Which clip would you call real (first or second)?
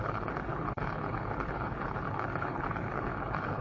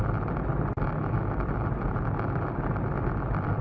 second